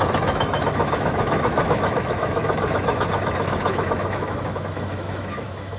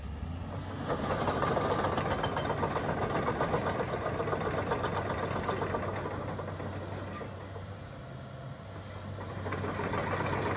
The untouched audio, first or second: second